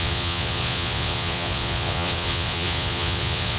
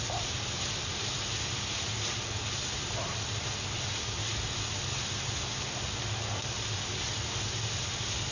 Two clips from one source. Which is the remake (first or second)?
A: first